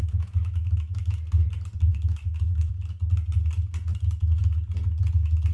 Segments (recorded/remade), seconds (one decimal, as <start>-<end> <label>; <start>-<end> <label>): 0.0-1.2 remade; 1.2-1.9 recorded; 1.9-2.7 remade; 2.7-5.5 recorded